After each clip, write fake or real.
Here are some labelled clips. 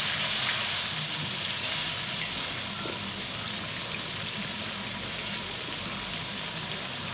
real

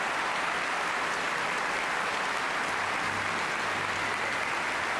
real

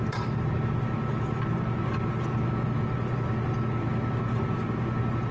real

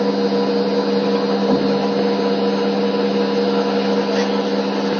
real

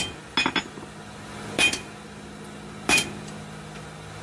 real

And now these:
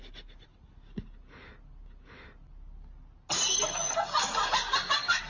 real